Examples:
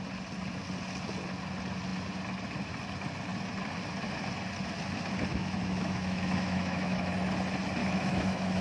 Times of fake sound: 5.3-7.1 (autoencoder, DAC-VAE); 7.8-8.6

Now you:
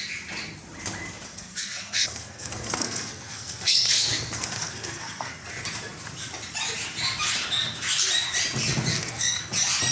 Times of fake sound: 1.3-5.3 (codec, SNAC); 8.9-9.4

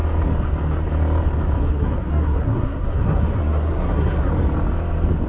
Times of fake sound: 1.6-4.3 (codec, SNAC)

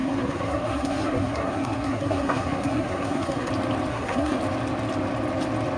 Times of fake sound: 0.0-3.5 (codec, SNAC); 3.9-4.4

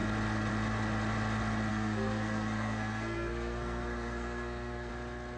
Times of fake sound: 1.7-4.9 (codec, SNAC)